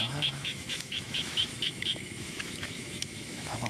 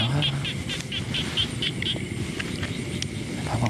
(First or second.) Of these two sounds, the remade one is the first